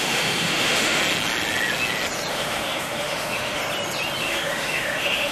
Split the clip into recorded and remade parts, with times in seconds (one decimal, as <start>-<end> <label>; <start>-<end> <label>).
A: 0.0-1.0 remade; 1.0-2.3 recorded; 2.3-3.6 remade; 3.6-4.2 recorded; 4.2-5.3 remade